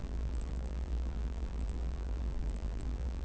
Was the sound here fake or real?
fake